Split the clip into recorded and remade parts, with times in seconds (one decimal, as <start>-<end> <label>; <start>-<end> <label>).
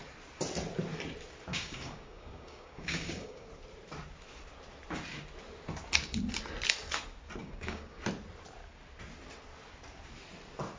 0.0-1.5 recorded; 1.5-3.5 remade; 3.5-7.4 recorded; 7.4-8.0 remade; 8.0-10.8 recorded